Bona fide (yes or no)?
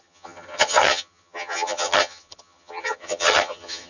no